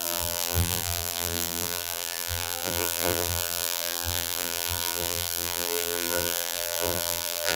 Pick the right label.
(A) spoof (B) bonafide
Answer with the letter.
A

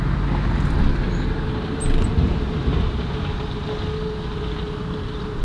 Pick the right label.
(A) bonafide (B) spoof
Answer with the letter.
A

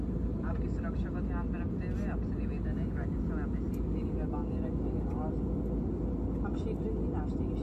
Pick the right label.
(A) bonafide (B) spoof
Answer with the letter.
A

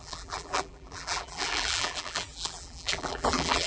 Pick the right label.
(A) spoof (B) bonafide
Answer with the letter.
A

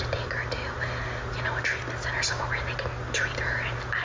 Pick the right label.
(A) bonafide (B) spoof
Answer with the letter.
A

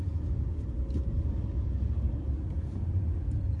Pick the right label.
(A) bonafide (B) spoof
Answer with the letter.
A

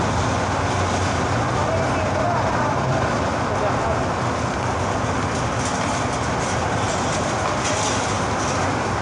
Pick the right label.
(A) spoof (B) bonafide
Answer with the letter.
B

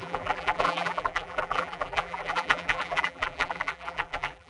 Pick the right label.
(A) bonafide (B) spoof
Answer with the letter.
B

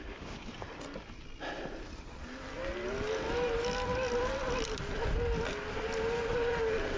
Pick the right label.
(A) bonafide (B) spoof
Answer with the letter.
A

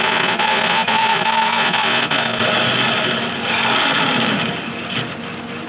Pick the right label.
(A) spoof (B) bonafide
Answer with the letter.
B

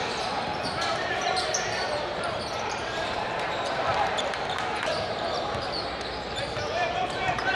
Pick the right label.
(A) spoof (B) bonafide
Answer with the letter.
A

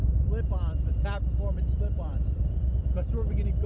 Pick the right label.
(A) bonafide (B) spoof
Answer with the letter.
B